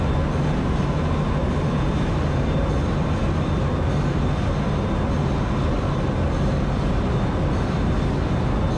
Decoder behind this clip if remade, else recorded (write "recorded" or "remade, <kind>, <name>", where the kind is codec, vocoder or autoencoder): recorded